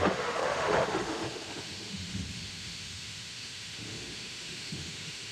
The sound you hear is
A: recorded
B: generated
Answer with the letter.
B